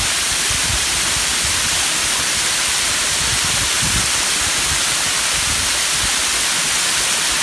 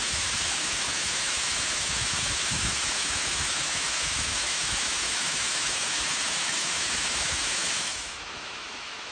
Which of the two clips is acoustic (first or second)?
first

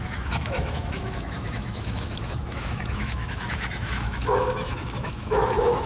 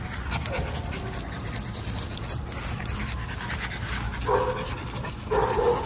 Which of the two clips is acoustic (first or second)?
second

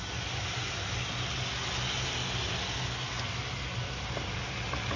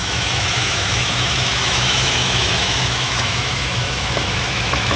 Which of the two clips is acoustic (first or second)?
first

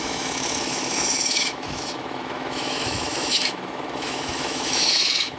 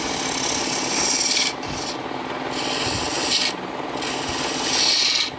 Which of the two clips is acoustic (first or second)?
second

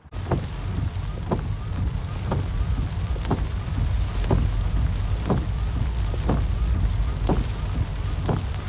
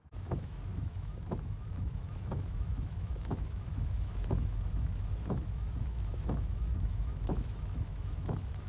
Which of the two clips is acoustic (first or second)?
first